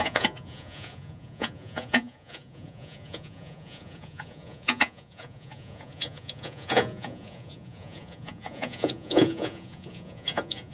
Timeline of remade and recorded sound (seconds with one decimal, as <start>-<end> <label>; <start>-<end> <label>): 0.0-10.7 remade